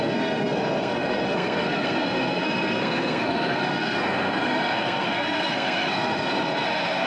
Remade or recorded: remade